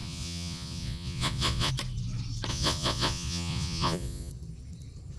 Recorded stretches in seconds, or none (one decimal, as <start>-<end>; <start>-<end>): 1.7-2.5; 4.3-5.2